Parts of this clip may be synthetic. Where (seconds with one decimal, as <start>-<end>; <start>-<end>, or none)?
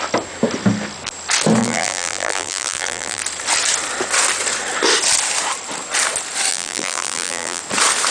1.6-3.2; 6.5-7.6